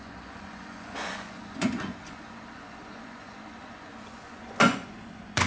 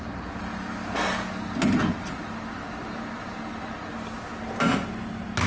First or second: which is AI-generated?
first